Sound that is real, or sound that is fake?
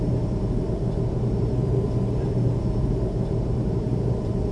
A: fake